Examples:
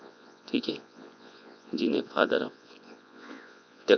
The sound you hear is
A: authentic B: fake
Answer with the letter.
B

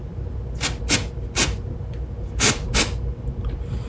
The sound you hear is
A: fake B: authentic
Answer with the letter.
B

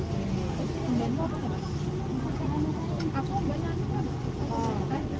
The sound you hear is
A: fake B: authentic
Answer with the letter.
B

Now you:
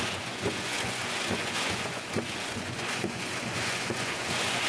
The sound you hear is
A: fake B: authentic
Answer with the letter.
A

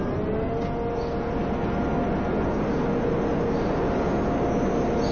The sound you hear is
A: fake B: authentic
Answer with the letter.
B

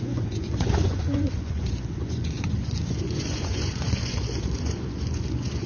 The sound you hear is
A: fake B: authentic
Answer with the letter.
A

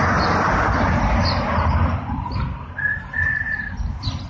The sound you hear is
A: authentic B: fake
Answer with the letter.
A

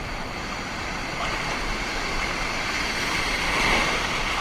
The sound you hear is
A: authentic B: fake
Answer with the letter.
A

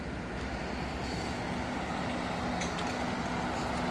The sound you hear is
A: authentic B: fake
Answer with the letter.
A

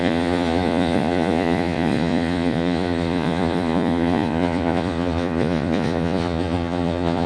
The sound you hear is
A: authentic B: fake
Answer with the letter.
B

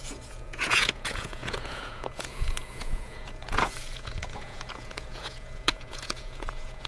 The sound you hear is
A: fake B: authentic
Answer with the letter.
A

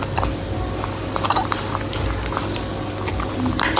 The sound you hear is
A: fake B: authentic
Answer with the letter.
B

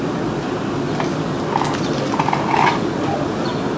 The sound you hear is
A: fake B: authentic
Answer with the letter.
B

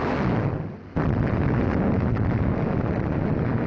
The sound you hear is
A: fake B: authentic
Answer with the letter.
B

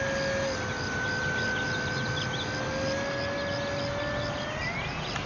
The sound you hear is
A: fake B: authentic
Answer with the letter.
B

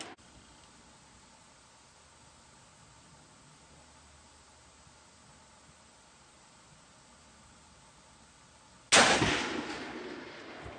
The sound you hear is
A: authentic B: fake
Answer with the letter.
A